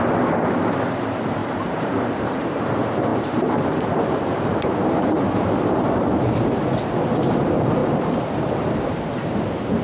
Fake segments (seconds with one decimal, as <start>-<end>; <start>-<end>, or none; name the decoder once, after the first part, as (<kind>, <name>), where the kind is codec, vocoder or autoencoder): 1.4-2.6 (vocoder, BigVGAN v2); 3.1-6.4; 7.8-9.4